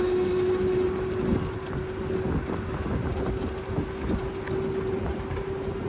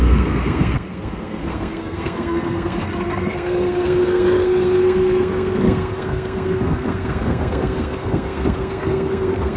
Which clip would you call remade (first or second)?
second